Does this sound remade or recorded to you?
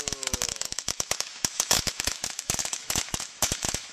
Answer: remade